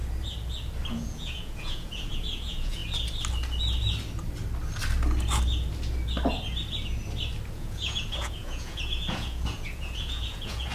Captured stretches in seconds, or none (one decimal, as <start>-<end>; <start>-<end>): 0.0-0.9; 2.8-7.5